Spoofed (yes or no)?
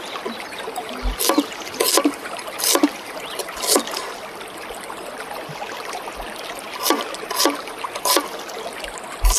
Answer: no